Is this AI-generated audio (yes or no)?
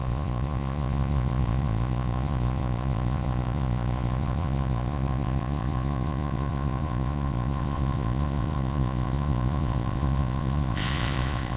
yes